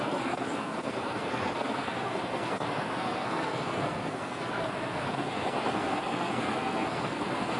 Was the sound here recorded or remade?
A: remade